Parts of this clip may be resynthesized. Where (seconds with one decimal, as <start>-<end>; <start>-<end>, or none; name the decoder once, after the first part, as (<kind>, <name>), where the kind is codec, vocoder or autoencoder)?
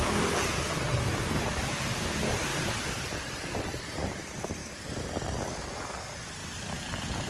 0.0-6.4 (vocoder, BigVGAN v2)